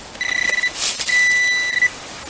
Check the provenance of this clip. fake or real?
real